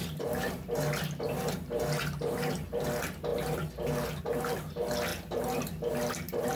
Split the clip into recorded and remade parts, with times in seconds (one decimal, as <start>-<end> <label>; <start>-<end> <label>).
0.0-0.6 remade; 0.6-6.5 recorded